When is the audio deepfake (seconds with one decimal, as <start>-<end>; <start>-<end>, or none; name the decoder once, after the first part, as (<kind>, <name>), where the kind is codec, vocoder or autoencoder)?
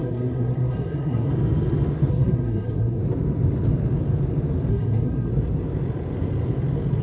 0.0-1.3 (codec, SNAC); 2.1-3.0; 4.7-5.3